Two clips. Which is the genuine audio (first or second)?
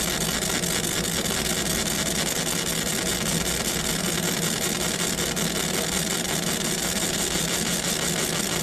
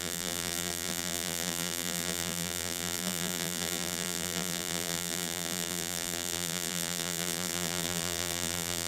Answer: first